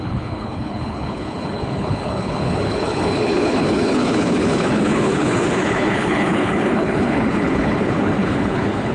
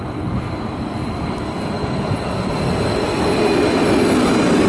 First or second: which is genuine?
second